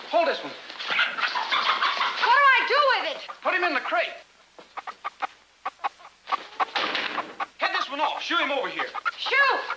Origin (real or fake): real